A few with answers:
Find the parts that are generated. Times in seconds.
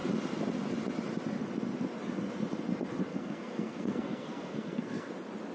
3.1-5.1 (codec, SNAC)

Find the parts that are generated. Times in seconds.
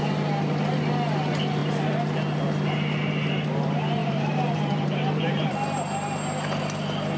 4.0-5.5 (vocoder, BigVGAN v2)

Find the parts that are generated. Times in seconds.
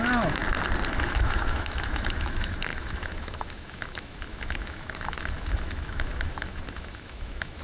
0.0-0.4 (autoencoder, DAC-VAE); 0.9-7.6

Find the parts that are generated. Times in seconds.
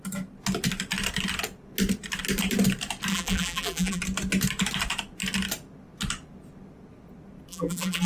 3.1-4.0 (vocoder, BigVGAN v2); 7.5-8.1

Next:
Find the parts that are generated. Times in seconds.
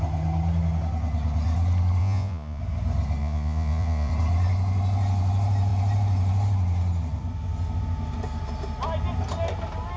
2.0-2.6 (vocoder, Vocos); 3.2-4.1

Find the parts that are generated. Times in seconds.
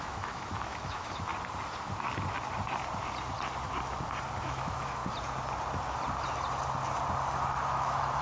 0.0-1.3 (autoencoder, DAC-VAE); 4.4-5.0; 7.7-8.2